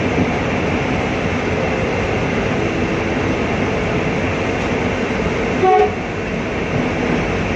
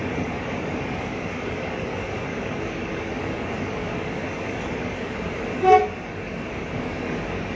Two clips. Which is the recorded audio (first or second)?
first